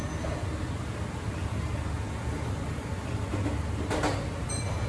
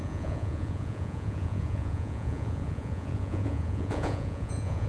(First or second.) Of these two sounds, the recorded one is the first